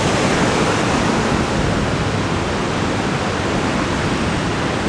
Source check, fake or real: real